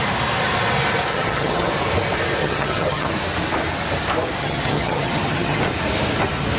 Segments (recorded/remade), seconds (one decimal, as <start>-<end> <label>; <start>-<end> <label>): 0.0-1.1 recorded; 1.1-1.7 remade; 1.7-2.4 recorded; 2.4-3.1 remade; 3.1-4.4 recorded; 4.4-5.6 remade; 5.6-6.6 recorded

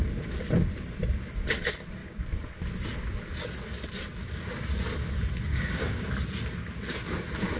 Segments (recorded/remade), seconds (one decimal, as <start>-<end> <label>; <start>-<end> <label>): 0.0-5.5 recorded; 5.5-6.1 remade; 6.1-7.6 recorded

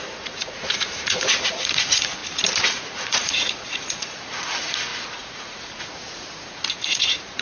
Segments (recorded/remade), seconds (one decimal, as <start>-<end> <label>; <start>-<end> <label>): 0.0-2.2 remade; 2.2-2.7 recorded; 2.7-7.4 remade